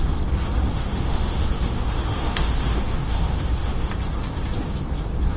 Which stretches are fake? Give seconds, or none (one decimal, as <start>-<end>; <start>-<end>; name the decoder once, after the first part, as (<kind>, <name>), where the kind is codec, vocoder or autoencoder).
0.7-3.9 (autoencoder, DAC-VAE)